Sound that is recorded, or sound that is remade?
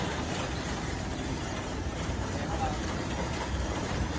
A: remade